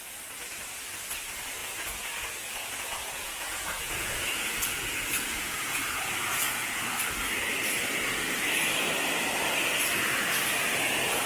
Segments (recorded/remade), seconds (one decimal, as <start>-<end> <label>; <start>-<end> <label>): 0.0-1.6 recorded; 1.6-6.8 remade; 6.8-11.3 recorded